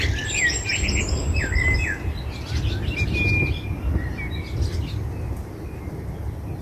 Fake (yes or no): no